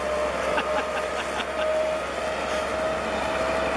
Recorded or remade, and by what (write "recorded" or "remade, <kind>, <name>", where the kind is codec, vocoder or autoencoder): recorded